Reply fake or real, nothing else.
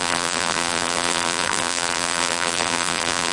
fake